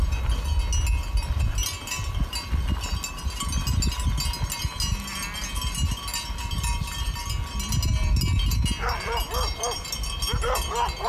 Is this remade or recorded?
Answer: recorded